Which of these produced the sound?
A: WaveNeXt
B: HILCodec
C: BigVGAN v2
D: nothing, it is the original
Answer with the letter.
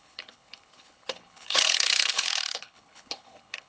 B